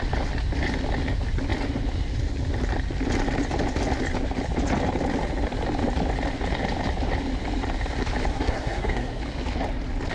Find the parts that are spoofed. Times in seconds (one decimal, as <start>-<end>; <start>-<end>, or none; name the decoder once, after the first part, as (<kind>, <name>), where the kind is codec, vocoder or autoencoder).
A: 8.3-9.2 (codec, SNAC)

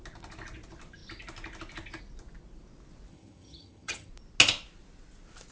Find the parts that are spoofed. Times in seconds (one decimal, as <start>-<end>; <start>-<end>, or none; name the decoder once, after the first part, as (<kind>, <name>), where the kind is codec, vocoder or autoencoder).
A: 3.1-4.1 (vocoder, HiFi-GAN)

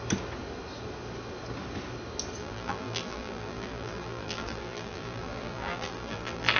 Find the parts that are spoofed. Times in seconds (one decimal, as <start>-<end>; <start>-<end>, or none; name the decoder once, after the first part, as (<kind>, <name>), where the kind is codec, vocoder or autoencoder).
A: 2.4-6.6 (vocoder, BigVGAN v2)

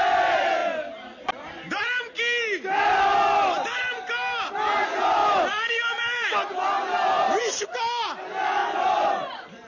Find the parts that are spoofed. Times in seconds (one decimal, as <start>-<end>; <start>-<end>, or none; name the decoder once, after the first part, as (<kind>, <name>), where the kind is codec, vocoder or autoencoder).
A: 0.6-2.2 (vocoder, BigVGAN v2); 5.2-7.4; 8.6-9.7

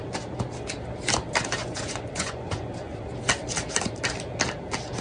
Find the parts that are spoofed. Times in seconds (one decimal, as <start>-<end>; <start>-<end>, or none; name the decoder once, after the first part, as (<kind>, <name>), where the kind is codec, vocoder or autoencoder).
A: 1.6-3.0 (vocoder, Vocos)